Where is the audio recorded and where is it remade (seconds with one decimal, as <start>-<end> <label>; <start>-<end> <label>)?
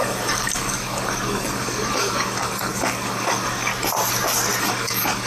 0.0-3.7 remade; 3.7-4.6 recorded; 4.6-5.3 remade